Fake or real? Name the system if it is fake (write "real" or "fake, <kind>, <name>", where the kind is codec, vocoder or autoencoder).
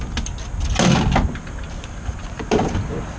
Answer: real